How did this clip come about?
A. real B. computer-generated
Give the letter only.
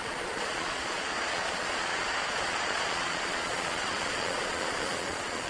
B